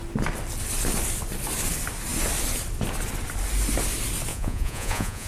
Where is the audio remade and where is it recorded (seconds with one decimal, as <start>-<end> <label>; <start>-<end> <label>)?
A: 0.0-4.3 recorded; 4.3-5.3 remade